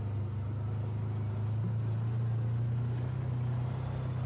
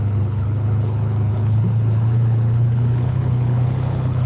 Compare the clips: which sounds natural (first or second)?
first